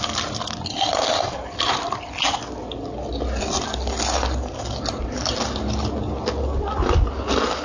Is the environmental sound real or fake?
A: real